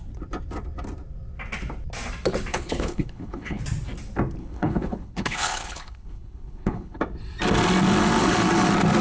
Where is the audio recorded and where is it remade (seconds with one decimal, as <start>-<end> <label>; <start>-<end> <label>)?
0.0-2.5 recorded; 2.5-3.6 remade; 3.6-4.4 recorded; 4.4-7.0 remade; 7.0-9.0 recorded